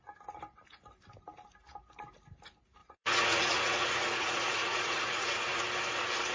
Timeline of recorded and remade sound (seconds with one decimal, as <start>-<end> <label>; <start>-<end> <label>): 0.0-2.8 recorded; 2.8-5.6 remade; 5.6-6.3 recorded